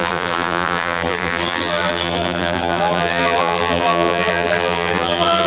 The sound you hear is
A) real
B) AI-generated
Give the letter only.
B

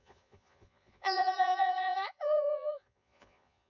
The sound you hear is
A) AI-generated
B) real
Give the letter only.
A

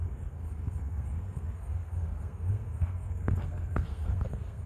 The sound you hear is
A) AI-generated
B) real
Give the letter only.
A